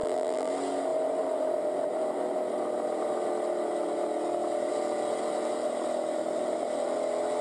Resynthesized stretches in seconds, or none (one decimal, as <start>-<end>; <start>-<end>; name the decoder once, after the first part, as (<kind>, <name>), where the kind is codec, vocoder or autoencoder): 0.0-0.5 (vocoder, BigVGAN v2)